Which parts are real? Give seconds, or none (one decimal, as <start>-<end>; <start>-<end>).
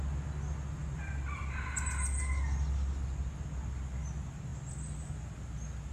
0.0-0.8; 1.4-5.9